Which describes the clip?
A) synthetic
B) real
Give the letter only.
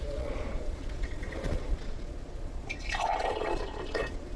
A